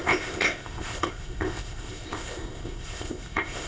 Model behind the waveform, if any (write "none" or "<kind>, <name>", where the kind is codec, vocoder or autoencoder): codec, ZipCodec